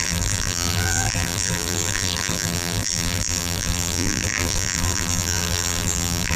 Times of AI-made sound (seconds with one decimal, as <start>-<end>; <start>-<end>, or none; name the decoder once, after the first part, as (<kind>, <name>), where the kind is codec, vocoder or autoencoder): 0.0-6.4 (vocoder, BigVGAN v2)